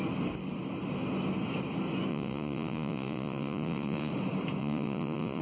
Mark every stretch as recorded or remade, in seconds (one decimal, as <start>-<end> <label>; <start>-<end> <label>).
0.0-2.1 recorded; 2.1-4.1 remade; 4.1-4.6 recorded; 4.6-5.4 remade